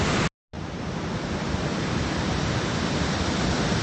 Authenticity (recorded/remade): recorded